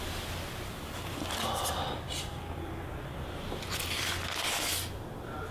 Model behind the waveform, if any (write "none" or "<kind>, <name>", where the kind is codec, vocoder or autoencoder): none